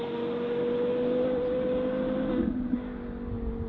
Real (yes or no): yes